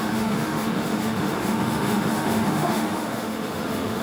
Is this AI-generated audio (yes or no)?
yes